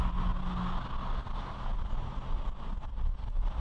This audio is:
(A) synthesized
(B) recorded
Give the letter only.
B